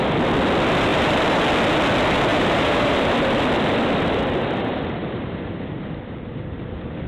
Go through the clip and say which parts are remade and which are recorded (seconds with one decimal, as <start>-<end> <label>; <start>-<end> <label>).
0.0-0.9 recorded; 0.9-1.4 remade; 1.4-2.3 recorded; 2.3-3.1 remade; 3.1-5.0 recorded; 5.0-7.1 remade